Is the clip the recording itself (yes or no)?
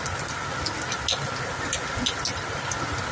yes